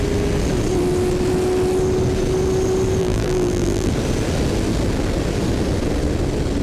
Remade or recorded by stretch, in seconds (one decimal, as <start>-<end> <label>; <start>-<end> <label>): 0.0-3.0 recorded; 3.0-3.9 remade; 3.9-6.6 recorded